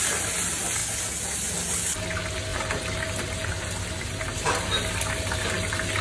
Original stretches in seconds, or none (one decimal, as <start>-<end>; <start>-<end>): 0.0-6.0